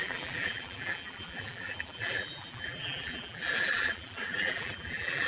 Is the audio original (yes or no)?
no